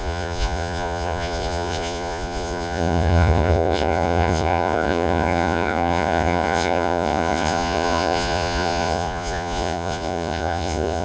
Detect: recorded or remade remade